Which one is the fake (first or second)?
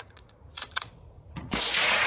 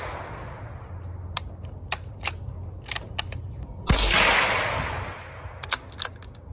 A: first